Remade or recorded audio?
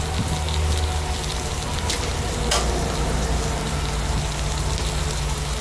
recorded